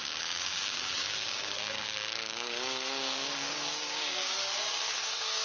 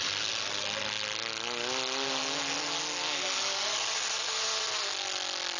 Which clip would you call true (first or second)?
second